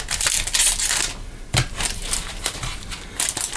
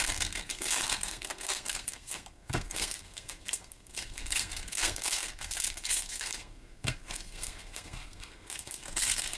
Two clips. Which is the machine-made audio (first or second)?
second